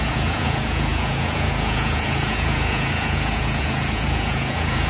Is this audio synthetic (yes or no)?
yes